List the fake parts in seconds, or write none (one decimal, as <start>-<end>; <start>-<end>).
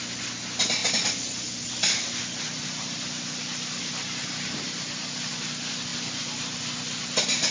none